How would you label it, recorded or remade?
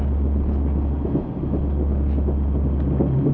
recorded